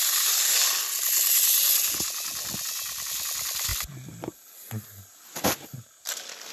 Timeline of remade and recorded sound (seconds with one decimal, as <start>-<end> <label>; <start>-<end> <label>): 0.0-2.3 recorded; 2.3-3.1 remade; 3.1-3.7 recorded; 3.7-5.1 remade; 5.1-6.5 recorded